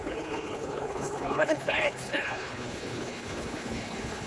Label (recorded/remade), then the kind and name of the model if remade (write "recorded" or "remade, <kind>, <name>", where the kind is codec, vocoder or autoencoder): remade, codec, HILCodec